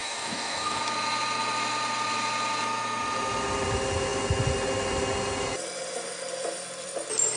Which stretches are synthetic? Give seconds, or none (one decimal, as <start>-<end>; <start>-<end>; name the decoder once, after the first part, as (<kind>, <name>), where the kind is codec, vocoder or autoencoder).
0.0-0.8 (codec, DAC)